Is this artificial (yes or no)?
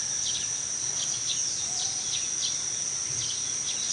no